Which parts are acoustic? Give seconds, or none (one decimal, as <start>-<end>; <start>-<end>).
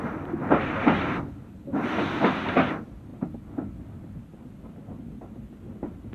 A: 0.0-6.1